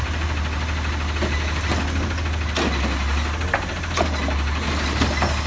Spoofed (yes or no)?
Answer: no